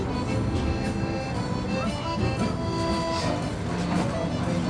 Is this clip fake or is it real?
real